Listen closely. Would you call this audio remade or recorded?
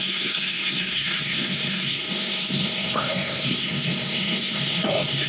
remade